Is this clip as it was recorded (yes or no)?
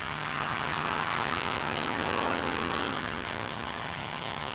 no